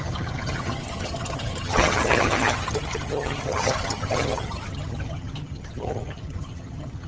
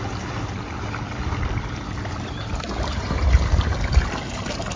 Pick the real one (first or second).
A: second